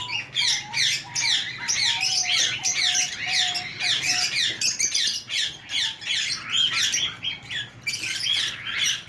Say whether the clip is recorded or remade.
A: recorded